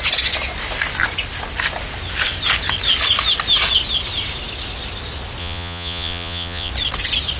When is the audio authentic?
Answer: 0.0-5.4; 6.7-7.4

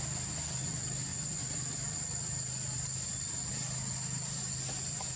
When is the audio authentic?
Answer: 0.0-5.2

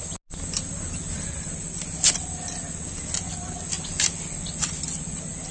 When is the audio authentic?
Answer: 0.0-5.5

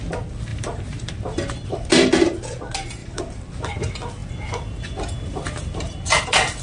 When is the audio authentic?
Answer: 0.0-0.5; 1.4-3.0; 3.7-6.6

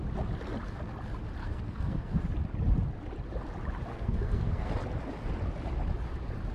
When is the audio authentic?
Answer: 0.0-1.4; 2.2-3.9; 4.7-6.5

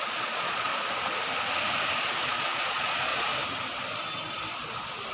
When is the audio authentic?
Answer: 0.7-2.1; 3.1-5.1